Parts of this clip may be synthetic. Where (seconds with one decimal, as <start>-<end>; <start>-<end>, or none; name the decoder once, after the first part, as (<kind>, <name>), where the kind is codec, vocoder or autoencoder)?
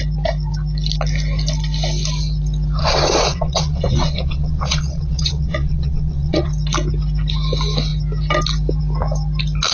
2.8-6.5 (vocoder, WaveNeXt)